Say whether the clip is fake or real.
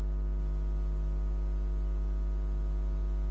real